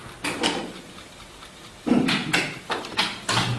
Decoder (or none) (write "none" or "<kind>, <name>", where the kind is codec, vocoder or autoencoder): none